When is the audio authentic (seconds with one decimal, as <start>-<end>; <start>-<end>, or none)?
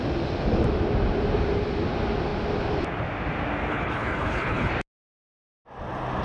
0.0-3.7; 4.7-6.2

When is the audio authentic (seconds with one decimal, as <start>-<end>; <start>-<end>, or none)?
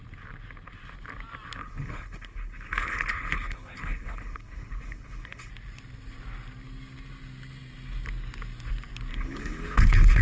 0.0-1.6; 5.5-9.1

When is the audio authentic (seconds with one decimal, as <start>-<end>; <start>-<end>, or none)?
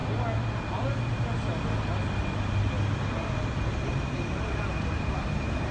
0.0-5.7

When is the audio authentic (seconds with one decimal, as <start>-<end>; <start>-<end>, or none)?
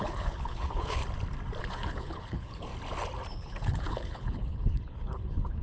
1.0-1.6; 2.7-3.3